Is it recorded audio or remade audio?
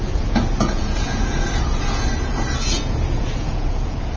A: remade